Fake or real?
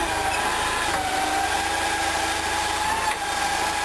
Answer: real